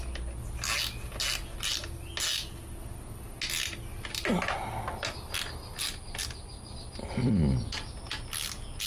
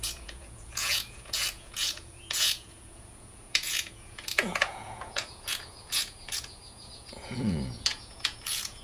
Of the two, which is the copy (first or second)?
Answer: second